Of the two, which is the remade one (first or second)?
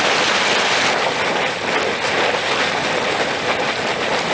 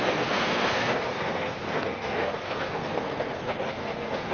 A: second